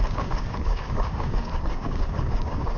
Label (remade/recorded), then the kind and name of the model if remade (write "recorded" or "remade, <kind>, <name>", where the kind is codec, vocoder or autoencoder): remade, codec, DAC